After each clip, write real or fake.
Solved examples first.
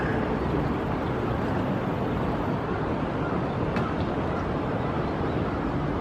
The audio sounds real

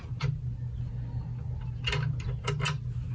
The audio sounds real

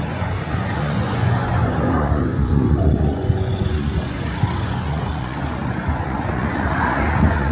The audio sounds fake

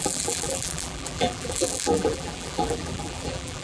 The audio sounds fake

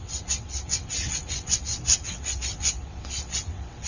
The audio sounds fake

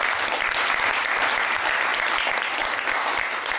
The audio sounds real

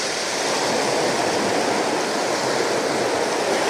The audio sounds real